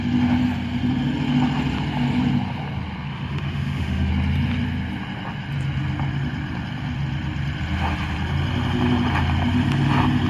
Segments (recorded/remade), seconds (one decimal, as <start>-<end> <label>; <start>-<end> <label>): 0.0-3.1 recorded; 3.1-4.1 remade; 4.1-10.3 recorded